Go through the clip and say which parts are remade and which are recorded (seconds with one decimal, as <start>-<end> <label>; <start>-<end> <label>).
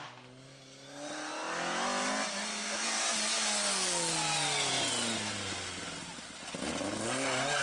0.0-7.6 recorded